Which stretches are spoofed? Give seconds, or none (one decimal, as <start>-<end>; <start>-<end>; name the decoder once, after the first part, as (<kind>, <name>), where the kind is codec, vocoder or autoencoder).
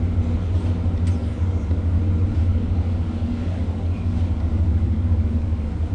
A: 1.2-2.0 (codec, DAC); 2.4-5.9